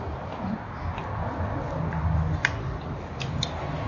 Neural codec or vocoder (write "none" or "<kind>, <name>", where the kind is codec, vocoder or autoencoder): none